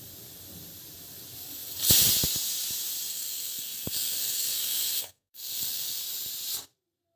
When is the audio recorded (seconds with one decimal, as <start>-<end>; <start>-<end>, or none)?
0.0-3.1; 6.0-7.2